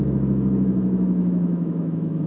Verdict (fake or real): fake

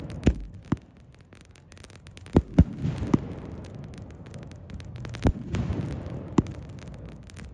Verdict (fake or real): real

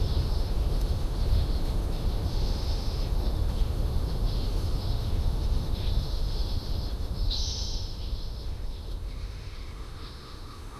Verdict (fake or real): fake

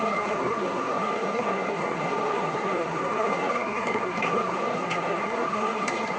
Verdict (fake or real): fake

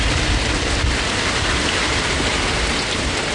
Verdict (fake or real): real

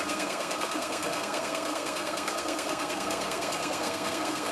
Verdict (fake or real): fake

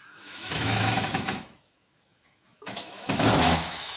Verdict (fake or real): fake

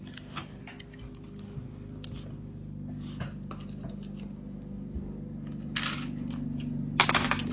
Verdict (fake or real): real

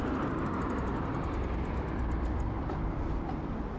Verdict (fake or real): fake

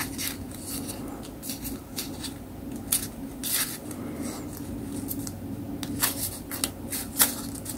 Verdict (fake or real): real